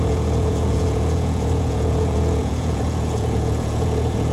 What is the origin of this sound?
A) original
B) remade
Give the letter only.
B